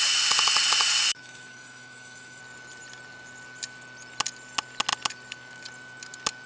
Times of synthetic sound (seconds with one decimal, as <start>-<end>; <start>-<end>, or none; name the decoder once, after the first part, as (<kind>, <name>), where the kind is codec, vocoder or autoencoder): 1.1-2.4 (autoencoder, DAC-VAE)